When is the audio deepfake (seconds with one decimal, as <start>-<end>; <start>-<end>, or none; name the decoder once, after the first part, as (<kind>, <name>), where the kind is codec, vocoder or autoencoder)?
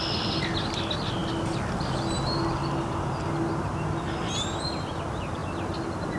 none